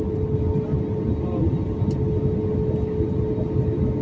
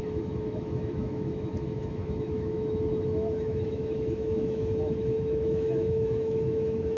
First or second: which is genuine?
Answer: first